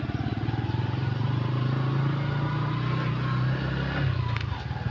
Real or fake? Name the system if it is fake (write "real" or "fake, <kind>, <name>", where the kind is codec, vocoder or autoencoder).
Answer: real